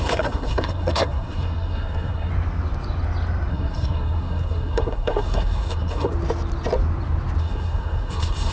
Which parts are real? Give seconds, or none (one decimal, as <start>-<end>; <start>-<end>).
2.3-3.5; 6.1-7.4

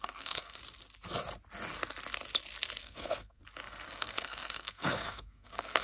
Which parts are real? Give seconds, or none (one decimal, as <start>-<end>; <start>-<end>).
0.6-2.8; 3.4-3.9

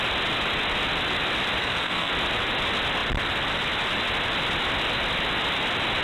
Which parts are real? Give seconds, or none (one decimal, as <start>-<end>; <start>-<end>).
0.0-1.6; 2.1-6.0

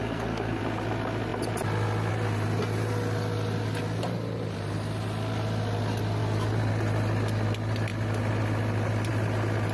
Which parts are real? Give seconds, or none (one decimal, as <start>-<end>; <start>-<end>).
0.6-9.7

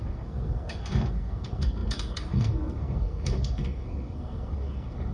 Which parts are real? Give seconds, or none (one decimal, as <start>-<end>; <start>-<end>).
none

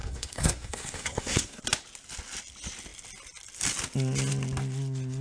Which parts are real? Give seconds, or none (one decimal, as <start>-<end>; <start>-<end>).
1.6-5.2